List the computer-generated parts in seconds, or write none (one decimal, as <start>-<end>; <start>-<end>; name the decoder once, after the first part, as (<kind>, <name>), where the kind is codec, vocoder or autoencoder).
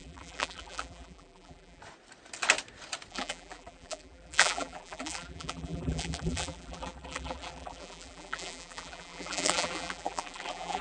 0.0-1.8 (vocoder, BigVGAN v2); 3.1-10.8